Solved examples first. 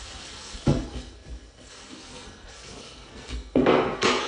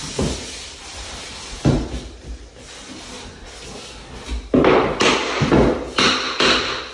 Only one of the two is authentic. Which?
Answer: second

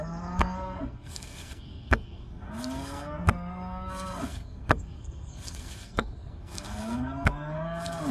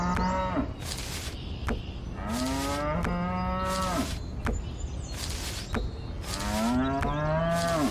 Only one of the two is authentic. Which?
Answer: second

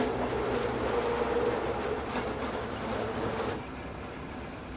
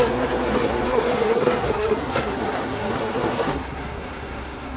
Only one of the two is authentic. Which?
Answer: first